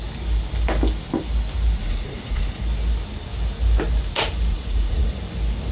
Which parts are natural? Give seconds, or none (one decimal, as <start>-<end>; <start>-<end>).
0.0-1.8; 2.6-4.5; 5.2-5.7